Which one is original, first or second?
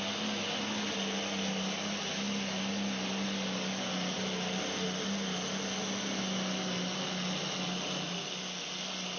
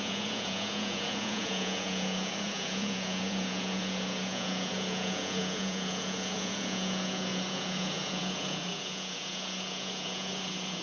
first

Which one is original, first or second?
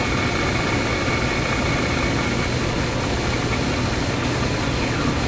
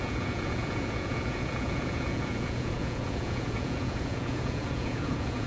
first